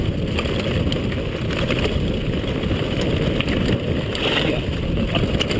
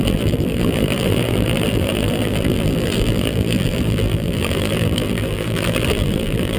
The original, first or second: first